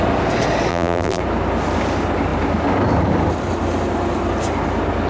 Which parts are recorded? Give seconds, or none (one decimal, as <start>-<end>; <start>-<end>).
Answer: 0.0-0.7; 1.2-5.1